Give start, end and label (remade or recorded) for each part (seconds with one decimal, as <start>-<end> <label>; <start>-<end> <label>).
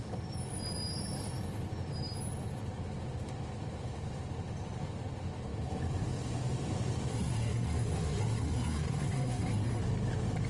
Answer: 0.0-7.1 recorded; 7.1-9.8 remade; 9.8-10.5 recorded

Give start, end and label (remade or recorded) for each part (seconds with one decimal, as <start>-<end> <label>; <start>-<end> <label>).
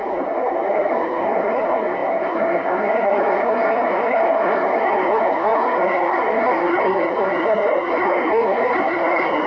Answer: 0.0-9.5 remade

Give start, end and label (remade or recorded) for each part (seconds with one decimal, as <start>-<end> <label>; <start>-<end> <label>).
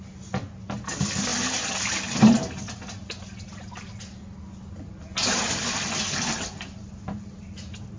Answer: 0.0-8.0 recorded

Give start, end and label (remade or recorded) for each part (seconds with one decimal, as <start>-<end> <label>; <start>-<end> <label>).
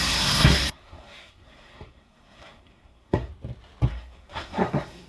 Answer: 0.0-3.3 remade; 3.3-3.9 recorded; 3.9-5.1 remade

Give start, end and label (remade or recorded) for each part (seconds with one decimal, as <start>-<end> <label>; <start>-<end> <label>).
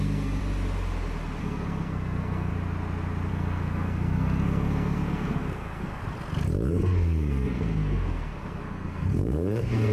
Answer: 0.0-0.4 remade; 0.4-1.4 recorded; 1.4-2.5 remade; 2.5-3.3 recorded; 3.3-6.0 remade; 6.0-6.7 recorded; 6.7-9.9 remade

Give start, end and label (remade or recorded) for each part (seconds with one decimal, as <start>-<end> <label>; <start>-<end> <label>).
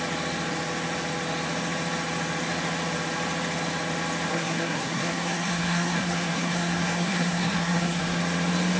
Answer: 0.0-4.3 recorded; 4.3-8.2 remade; 8.2-8.8 recorded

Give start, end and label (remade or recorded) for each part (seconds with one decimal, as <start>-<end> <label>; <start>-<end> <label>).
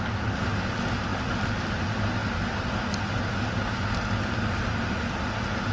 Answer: 0.0-5.7 recorded